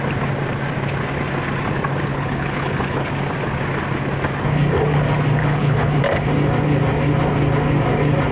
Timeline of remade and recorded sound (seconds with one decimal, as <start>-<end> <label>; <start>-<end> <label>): 0.0-2.1 recorded; 2.1-3.1 remade; 3.1-5.4 recorded; 5.4-6.0 remade; 6.0-8.3 recorded